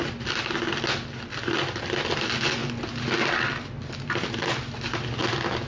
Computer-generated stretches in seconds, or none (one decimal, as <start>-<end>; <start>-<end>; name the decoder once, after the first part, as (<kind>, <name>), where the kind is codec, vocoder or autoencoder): none